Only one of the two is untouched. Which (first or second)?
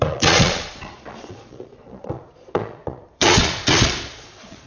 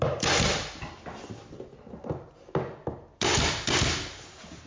second